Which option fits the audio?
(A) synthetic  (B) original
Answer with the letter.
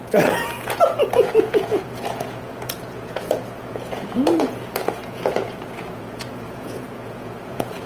A